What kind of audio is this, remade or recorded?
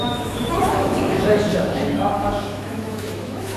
remade